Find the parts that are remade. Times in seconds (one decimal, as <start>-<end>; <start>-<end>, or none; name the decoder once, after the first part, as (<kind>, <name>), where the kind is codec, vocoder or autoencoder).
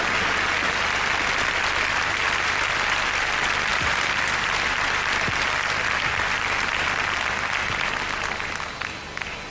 3.7-4.2 (vocoder, BigVGAN v2)